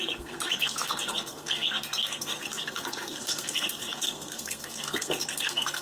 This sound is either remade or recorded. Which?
remade